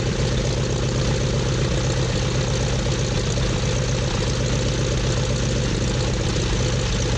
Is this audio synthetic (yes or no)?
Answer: no